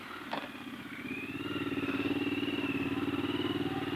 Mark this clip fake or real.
real